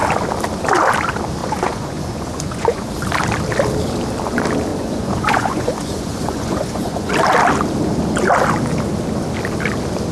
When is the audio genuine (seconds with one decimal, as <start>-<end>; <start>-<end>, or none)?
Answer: 0.0-1.4; 2.9-4.7; 7.1-10.1